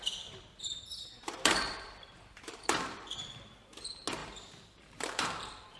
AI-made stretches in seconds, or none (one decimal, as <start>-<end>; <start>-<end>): 0.6-3.7; 4.2-5.8